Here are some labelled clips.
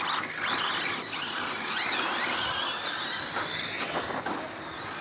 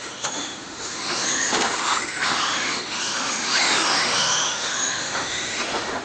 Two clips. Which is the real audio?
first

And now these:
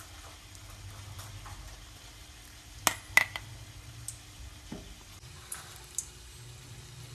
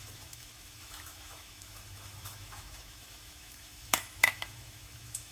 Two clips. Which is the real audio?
first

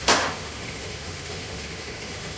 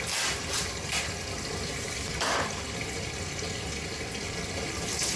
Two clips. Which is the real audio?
second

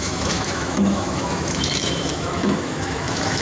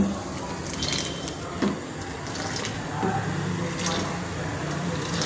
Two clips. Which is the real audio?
second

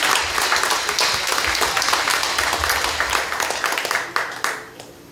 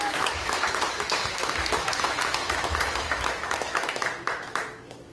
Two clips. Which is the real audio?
first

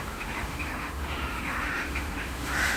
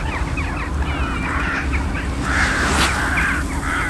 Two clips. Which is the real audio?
second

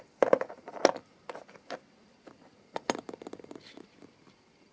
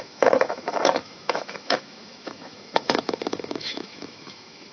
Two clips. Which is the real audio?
first